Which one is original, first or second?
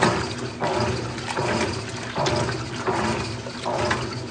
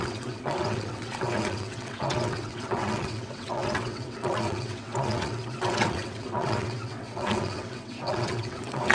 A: first